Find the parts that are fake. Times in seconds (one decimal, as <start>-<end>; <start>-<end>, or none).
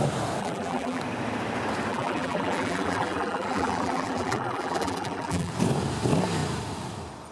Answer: 0.4-1.0; 1.9-5.5